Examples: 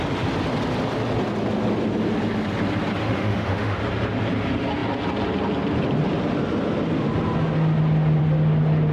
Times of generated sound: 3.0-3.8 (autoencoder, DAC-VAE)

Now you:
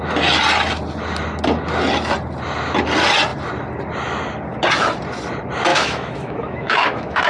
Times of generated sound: 5.7-7.3 (autoencoder, DAC-VAE)

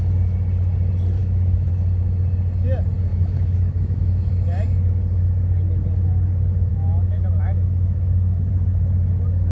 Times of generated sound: 1.2-1.7 (autoencoder, DAC-VAE); 3.1-4.3; 6.7-8.5

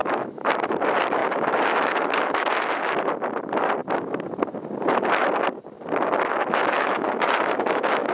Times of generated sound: 0.0-0.7 (autoencoder, DAC-VAE); 1.2-2.5; 6.6-8.1

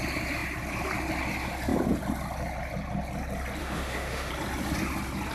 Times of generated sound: 3.6-4.3 (autoencoder, DAC-VAE)